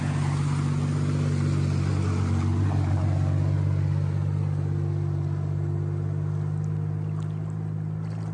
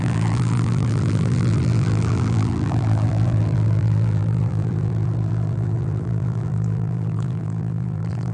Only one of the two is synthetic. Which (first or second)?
second